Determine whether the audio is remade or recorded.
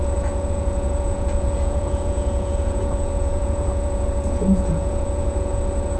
remade